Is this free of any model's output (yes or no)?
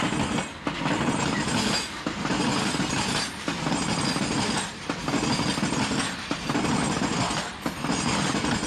yes